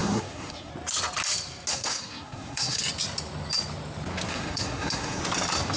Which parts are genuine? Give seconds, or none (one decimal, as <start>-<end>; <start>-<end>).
0.7-1.7; 2.8-4.3; 5.2-5.8